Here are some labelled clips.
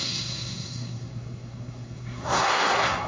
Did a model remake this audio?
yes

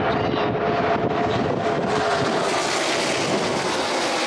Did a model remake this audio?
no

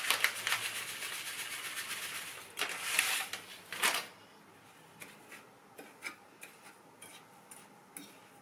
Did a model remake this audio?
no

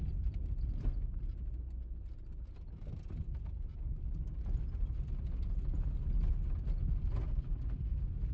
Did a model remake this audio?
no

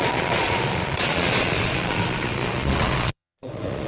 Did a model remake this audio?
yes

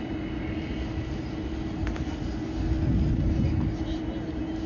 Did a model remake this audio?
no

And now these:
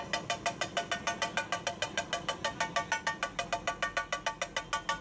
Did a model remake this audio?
no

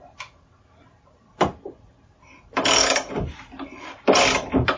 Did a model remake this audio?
no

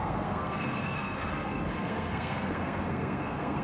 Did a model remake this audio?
yes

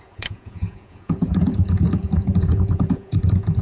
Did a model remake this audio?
yes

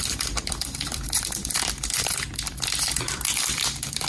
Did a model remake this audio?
yes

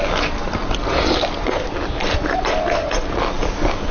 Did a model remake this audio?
no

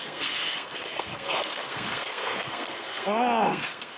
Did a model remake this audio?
yes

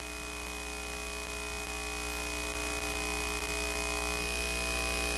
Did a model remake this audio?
no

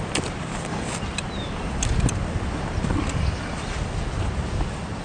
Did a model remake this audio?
no